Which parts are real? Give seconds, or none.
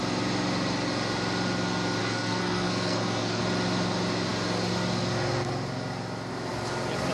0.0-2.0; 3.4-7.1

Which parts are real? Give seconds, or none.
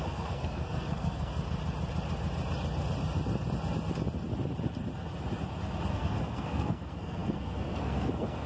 1.3-5.9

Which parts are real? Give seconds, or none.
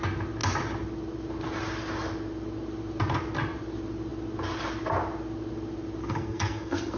0.0-6.0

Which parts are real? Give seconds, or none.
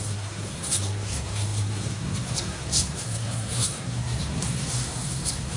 none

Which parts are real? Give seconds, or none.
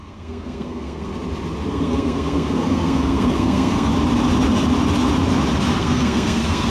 1.1-1.7; 3.9-5.8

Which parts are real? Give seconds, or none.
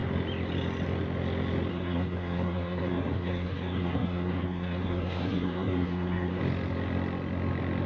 0.0-1.7; 6.4-7.9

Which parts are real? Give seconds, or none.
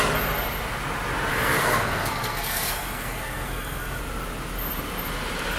0.0-1.3; 4.0-5.6